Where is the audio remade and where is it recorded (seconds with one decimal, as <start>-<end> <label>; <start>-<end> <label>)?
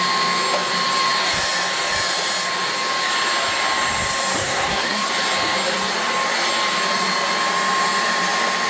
0.0-4.4 recorded; 4.4-5.1 remade; 5.1-8.7 recorded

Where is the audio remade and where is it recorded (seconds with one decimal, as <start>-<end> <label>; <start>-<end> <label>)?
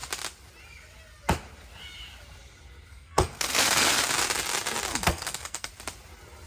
0.0-2.9 recorded; 2.9-4.0 remade; 4.0-4.9 recorded; 4.9-5.7 remade; 5.7-6.5 recorded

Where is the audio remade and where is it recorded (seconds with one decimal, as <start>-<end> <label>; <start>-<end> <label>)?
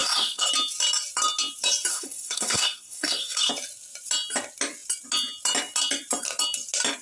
0.0-0.5 remade; 0.5-1.9 recorded; 1.9-3.5 remade; 3.5-7.0 recorded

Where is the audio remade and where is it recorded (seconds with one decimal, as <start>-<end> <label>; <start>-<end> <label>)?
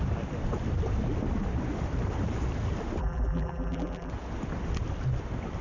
0.0-3.0 recorded; 3.0-4.1 remade; 4.1-5.6 recorded